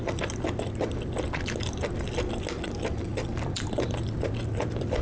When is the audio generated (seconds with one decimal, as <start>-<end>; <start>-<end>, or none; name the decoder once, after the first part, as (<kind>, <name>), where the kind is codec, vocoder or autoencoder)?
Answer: none